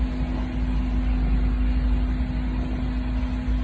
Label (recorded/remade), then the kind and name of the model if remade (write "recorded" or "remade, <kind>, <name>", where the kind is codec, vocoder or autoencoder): recorded